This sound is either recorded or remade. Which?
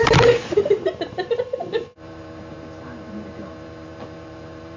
remade